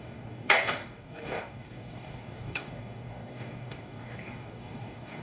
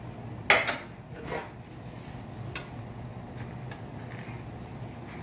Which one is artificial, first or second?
first